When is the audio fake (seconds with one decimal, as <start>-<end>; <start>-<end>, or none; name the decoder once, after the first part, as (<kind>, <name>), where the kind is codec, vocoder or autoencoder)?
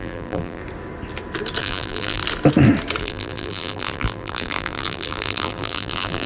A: 0.0-0.6 (vocoder, BigVGAN v2); 1.6-2.2; 3.0-6.3